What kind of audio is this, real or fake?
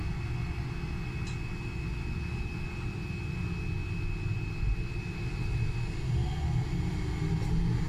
real